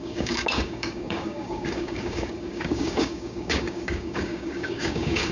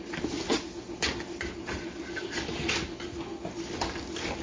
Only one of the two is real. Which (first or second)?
second